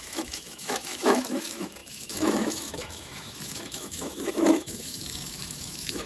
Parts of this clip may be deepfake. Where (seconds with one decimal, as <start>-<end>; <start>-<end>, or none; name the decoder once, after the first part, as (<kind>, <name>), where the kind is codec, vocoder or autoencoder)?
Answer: 0.0-6.1 (autoencoder, DAC-VAE)